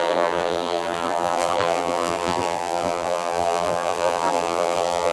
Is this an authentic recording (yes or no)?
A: no